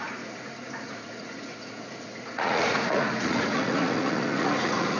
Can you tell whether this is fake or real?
fake